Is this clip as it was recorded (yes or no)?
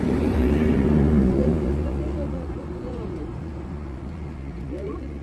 no